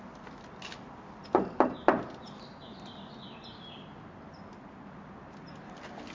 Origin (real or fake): real